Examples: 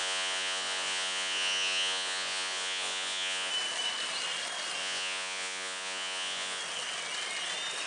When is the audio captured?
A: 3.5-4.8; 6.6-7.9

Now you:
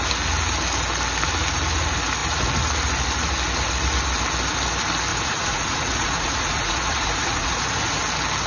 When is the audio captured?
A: 0.0-5.1; 8.0-8.5